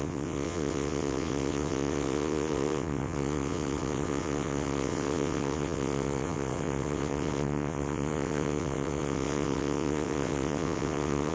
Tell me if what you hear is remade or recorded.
remade